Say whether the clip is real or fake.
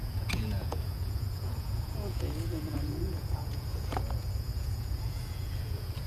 fake